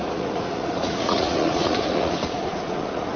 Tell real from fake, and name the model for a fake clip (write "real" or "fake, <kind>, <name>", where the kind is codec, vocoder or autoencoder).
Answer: fake, vocoder, Vocos